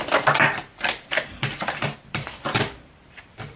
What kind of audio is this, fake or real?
fake